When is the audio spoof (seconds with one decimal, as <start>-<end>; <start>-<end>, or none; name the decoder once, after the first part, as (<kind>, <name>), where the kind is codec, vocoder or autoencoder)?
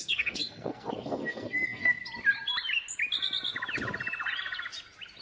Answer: 0.0-2.0 (codec, SNAC)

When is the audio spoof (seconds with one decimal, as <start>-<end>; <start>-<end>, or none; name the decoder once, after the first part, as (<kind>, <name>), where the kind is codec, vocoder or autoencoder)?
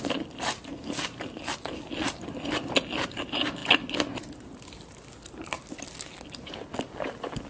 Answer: none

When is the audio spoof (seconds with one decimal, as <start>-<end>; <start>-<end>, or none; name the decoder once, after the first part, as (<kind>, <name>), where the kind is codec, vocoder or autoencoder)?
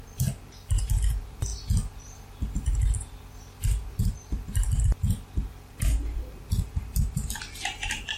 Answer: none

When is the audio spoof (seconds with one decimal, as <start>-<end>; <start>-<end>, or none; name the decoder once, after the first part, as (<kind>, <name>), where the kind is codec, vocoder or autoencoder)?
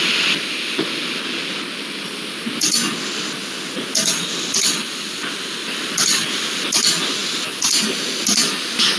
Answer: none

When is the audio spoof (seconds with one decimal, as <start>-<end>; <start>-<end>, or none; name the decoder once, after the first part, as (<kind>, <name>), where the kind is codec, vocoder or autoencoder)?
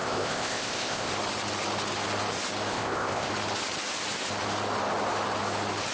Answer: 0.0-1.1 (codec, ZipCodec); 2.7-3.3